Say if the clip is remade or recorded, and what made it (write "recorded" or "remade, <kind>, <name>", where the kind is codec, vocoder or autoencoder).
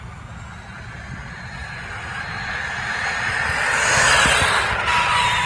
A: recorded